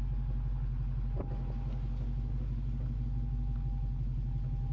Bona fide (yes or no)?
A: yes